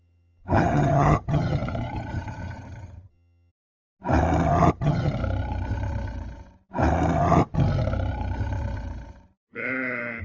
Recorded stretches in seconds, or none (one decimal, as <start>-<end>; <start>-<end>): 3.5-4.7; 5.2-10.2